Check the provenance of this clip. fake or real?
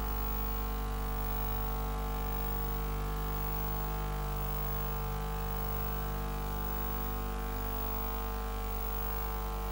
real